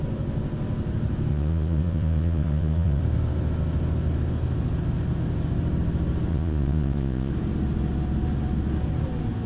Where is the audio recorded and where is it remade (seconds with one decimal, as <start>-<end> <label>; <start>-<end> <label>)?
0.0-1.3 recorded; 1.3-3.0 remade; 3.0-6.3 recorded; 6.3-7.3 remade; 7.3-9.5 recorded